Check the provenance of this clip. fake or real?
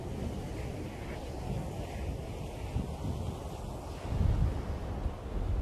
real